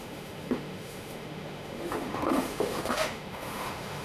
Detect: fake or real fake